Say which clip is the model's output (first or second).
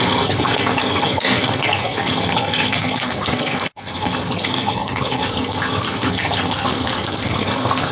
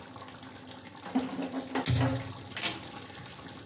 first